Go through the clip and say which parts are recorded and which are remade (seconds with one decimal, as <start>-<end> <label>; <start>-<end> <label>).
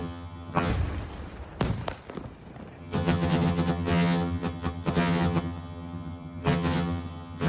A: 0.0-0.7 remade; 0.7-2.8 recorded; 2.8-7.5 remade